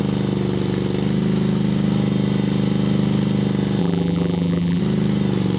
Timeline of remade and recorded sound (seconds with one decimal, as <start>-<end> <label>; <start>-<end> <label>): 0.0-3.8 recorded; 3.8-4.8 remade; 4.8-5.6 recorded